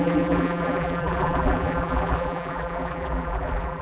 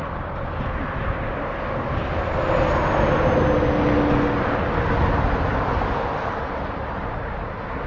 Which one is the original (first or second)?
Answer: second